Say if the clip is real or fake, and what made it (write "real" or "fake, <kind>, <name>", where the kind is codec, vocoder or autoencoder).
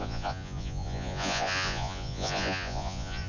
fake, vocoder, Vocos